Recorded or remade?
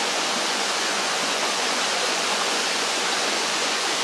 remade